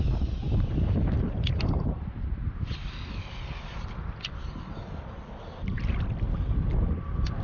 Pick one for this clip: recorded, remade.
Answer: recorded